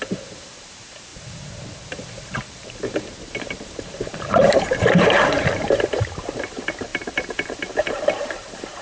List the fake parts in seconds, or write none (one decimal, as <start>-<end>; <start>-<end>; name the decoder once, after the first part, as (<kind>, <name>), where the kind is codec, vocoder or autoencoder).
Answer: 0.0-8.8 (vocoder, BigVGAN v2)